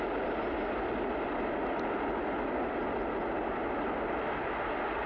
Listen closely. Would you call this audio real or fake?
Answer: real